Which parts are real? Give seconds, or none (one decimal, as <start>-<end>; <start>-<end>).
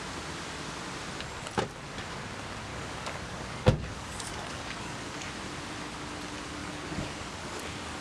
0.0-2.7; 5.3-6.6; 7.6-8.0